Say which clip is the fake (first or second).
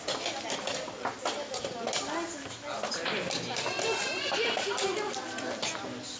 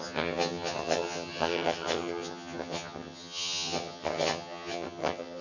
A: second